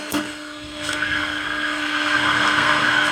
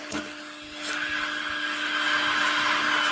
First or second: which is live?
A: second